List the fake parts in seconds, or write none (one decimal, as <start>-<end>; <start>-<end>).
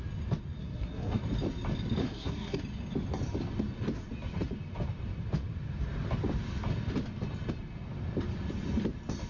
0.6-1.2; 2.0-2.6